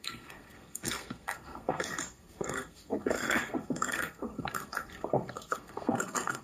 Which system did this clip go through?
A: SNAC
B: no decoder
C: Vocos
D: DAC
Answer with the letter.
A